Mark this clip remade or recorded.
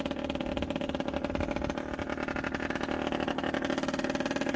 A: recorded